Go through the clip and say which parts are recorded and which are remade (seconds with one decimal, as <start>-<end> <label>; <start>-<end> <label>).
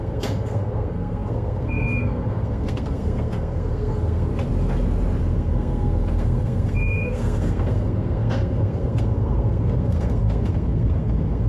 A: 0.0-4.3 remade; 4.3-5.2 recorded; 5.2-11.5 remade